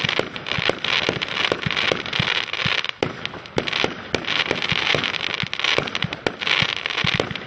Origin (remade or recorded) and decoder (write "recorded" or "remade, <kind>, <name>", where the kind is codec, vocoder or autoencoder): recorded